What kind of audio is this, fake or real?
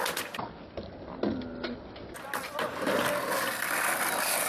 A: real